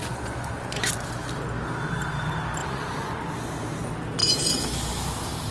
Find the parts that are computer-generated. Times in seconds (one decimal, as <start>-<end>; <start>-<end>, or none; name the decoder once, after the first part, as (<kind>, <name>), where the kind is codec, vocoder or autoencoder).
0.0-0.9 (vocoder, Vocos); 2.6-3.2